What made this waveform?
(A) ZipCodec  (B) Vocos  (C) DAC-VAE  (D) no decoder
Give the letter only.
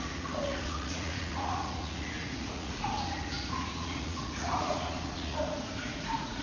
B